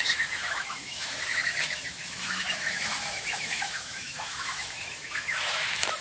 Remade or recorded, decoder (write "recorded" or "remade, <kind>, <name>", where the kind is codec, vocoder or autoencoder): remade, autoencoder, DAC-VAE